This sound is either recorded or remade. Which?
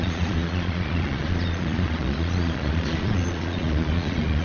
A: remade